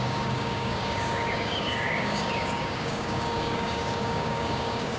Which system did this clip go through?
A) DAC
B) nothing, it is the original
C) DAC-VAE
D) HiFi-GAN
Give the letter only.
A